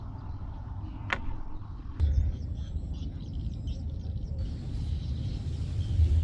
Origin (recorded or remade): recorded